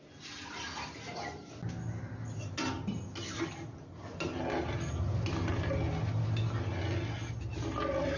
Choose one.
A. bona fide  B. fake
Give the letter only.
A